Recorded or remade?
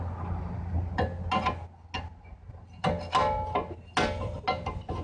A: recorded